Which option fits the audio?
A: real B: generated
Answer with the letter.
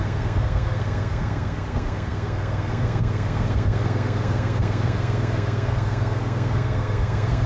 B